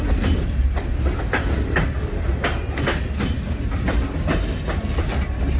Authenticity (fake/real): real